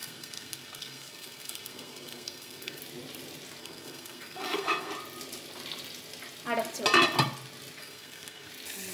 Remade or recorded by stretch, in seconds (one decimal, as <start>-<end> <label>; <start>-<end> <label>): 0.0-2.8 remade; 2.8-3.6 recorded; 3.6-4.9 remade; 4.9-7.8 recorded; 7.8-8.5 remade; 8.5-8.9 recorded